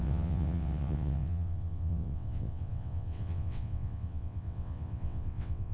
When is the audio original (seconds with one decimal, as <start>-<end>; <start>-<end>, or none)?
none